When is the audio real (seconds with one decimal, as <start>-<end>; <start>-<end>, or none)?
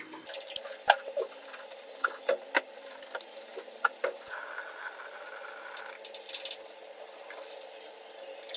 0.0-8.6